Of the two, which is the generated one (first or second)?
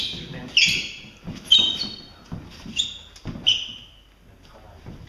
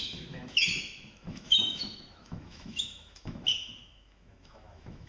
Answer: second